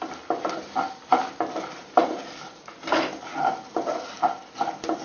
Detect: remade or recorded recorded